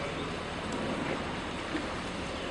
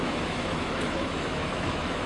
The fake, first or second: second